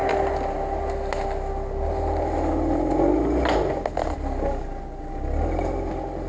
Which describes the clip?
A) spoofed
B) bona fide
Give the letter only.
B